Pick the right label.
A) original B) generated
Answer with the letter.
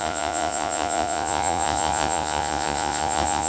B